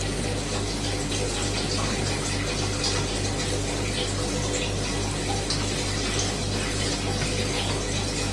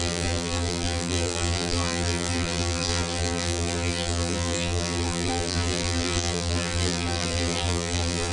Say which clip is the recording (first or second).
first